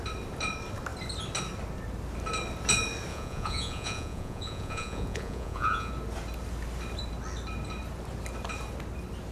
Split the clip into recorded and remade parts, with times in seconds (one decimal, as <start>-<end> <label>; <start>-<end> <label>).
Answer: 0.0-3.1 recorded; 3.1-5.9 remade; 5.9-9.3 recorded

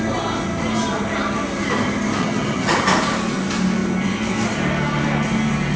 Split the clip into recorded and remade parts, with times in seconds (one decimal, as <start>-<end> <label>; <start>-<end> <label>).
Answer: 0.0-2.2 recorded; 2.2-2.7 remade; 2.7-5.8 recorded

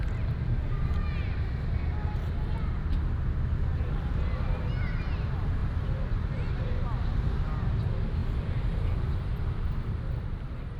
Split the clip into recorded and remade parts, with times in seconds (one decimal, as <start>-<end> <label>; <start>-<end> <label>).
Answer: 0.0-3.7 recorded; 3.7-4.3 remade; 4.3-5.6 recorded; 5.6-6.4 remade; 6.4-8.2 recorded; 8.2-10.8 remade

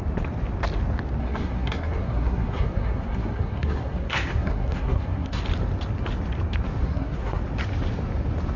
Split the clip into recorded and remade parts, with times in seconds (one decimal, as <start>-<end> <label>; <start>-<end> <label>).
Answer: 0.0-1.2 recorded; 1.2-5.4 remade; 5.4-6.8 recorded; 6.8-7.4 remade; 7.4-8.6 recorded

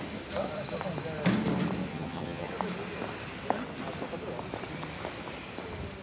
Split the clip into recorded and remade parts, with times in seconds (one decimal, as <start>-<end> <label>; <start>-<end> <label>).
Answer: 0.0-1.9 recorded; 1.9-2.5 remade; 2.5-6.0 recorded

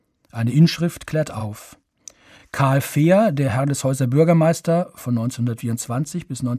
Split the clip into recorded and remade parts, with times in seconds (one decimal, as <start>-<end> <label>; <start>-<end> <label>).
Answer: 0.0-1.4 recorded; 1.4-2.0 remade; 2.0-6.6 recorded